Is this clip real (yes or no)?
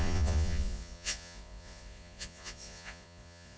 no